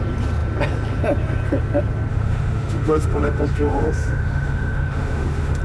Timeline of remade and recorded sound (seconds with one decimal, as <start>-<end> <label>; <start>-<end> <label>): 0.0-2.1 recorded; 2.1-5.6 remade